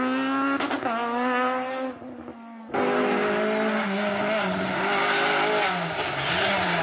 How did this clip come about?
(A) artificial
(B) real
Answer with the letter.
B